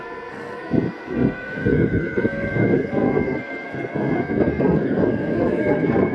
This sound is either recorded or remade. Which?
remade